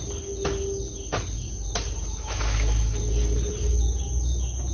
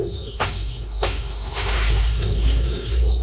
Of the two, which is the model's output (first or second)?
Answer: second